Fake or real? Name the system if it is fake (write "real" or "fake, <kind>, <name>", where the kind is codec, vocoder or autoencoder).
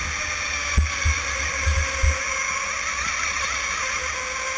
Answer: real